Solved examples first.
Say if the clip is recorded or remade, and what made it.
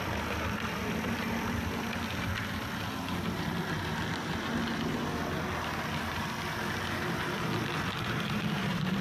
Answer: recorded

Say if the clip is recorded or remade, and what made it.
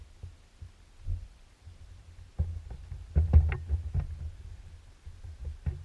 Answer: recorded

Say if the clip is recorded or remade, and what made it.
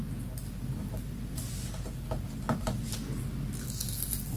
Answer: recorded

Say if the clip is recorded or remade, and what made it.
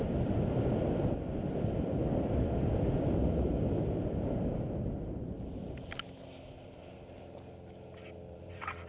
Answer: recorded